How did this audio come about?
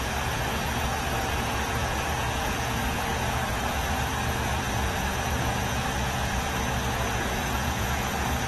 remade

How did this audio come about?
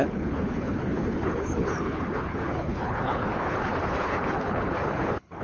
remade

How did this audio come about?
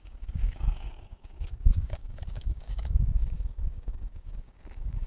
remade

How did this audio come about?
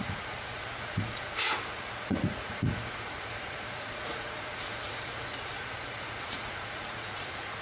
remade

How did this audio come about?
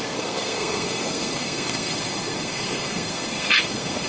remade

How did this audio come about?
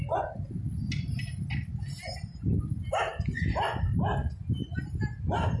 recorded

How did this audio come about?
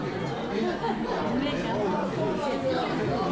recorded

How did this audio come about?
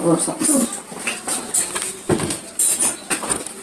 recorded